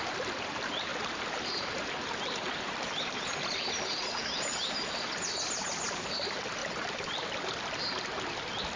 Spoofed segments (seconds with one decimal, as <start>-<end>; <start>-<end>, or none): 0.9-4.2; 6.6-7.8